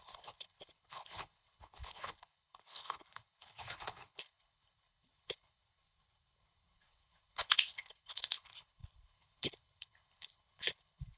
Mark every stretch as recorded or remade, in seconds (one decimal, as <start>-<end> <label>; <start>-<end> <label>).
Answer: 0.0-11.2 remade